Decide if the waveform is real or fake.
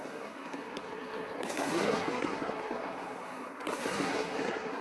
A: fake